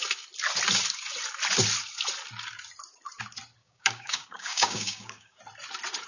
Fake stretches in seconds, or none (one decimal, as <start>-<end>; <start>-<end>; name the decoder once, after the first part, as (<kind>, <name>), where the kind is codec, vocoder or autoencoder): 3.6-5.4 (codec, DAC)